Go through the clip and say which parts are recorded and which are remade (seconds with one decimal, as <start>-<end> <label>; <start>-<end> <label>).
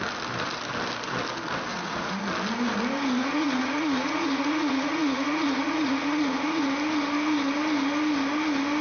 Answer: 0.0-1.7 recorded; 1.7-2.2 remade; 2.2-3.2 recorded; 3.2-6.6 remade; 6.6-8.8 recorded